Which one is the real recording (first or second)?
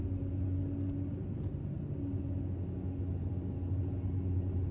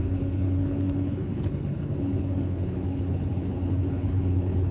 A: first